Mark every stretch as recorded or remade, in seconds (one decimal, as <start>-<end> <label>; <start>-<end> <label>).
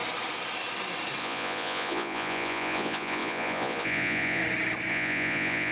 0.0-1.2 recorded; 1.2-4.4 remade; 4.4-4.9 recorded; 4.9-5.7 remade